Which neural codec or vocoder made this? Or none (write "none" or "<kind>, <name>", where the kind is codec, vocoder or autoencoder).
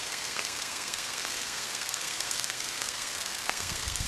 codec, SNAC